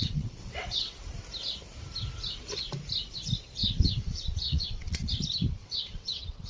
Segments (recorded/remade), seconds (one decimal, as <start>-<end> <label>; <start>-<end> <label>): 0.0-1.0 remade; 1.0-3.6 recorded; 3.6-5.1 remade; 5.1-5.6 recorded; 5.6-6.5 remade